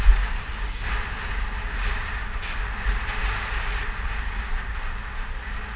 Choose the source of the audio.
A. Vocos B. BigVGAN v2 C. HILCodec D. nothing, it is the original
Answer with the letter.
D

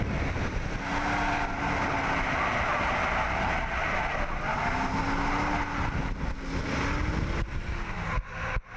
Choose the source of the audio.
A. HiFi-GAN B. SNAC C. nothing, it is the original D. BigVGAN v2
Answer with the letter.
C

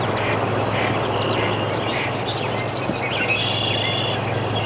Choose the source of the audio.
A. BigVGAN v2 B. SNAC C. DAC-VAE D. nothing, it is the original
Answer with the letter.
D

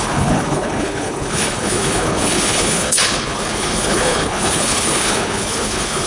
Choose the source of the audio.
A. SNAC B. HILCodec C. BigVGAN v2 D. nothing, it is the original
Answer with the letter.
B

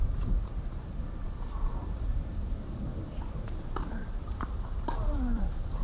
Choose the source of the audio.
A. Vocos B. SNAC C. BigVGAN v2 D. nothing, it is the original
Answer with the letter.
C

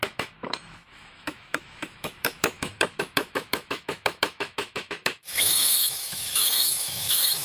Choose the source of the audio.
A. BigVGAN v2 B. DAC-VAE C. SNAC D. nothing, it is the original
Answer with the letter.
B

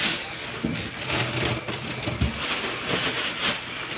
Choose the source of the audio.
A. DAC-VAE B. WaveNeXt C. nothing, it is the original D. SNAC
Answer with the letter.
C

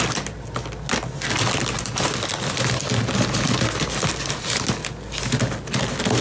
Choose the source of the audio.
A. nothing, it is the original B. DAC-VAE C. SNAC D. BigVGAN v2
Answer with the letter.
A